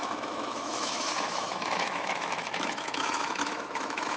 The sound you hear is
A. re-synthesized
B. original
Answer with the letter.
A